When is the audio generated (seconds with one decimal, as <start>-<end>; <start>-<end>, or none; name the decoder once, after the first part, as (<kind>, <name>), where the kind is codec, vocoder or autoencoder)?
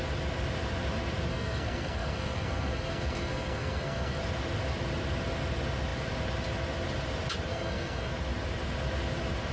1.3-4.2 (codec, SNAC); 7.5-8.1